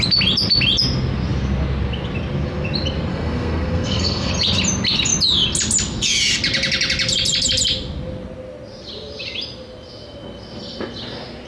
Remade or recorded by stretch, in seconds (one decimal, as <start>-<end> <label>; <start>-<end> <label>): 0.0-3.1 recorded; 3.1-4.3 remade; 4.3-11.5 recorded